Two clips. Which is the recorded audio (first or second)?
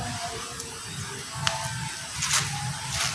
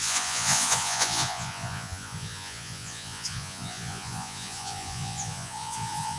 first